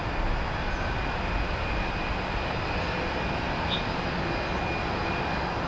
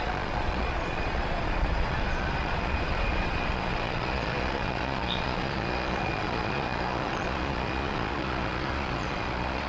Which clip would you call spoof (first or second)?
second